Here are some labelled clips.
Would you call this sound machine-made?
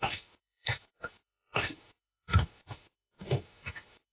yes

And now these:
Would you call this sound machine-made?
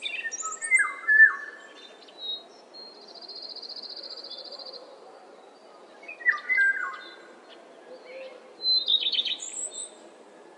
no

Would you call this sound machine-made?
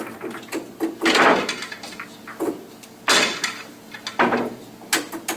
no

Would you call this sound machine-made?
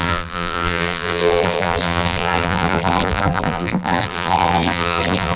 yes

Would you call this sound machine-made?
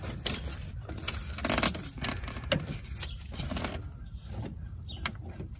no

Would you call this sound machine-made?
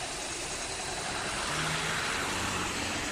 no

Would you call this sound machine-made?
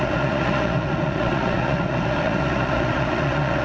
yes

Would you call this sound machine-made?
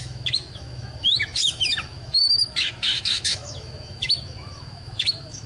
yes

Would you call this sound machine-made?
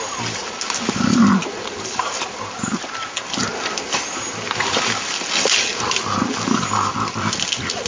no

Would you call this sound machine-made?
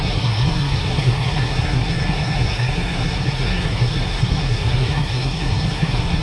yes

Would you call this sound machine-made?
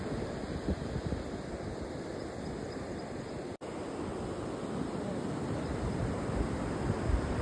no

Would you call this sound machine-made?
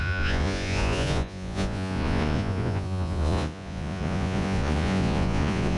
yes